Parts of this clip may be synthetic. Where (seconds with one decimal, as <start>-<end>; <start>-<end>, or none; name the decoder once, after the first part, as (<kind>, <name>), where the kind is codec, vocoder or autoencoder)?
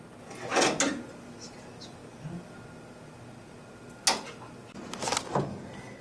none